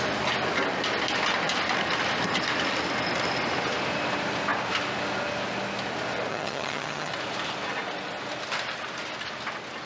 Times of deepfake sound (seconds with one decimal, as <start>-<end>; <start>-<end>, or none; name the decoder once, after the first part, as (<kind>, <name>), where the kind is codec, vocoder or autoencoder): 6.3-7.1 (vocoder, HiFi-GAN)